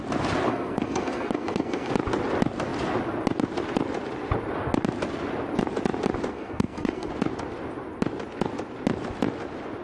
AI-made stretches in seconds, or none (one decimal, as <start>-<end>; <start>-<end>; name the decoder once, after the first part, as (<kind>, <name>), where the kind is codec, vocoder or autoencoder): 0.5-1.9 (codec, SNAC); 6.3-7.1